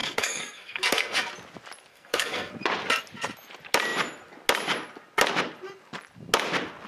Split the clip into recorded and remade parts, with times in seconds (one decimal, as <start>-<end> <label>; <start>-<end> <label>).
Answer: 0.0-1.3 remade; 1.3-1.9 recorded; 1.9-2.5 remade; 2.5-6.9 recorded